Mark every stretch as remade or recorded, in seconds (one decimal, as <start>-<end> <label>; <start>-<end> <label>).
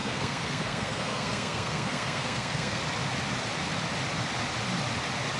0.0-2.8 remade; 2.8-5.4 recorded